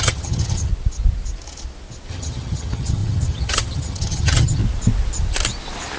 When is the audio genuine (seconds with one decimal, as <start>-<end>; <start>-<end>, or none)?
0.7-2.1; 4.6-6.0